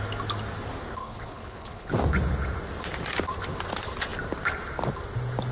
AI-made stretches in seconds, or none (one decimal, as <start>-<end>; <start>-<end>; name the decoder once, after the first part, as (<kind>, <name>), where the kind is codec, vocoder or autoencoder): 1.0-1.9 (codec, HILCodec)